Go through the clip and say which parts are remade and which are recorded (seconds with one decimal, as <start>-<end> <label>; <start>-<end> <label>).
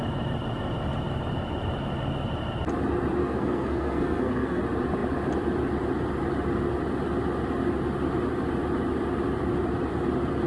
0.0-3.2 recorded; 3.2-4.6 remade; 4.6-10.5 recorded